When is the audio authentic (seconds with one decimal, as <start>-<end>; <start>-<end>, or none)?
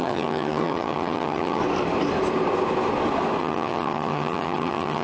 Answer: 1.6-3.4